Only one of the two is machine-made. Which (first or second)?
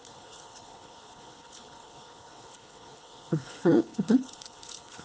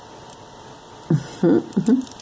first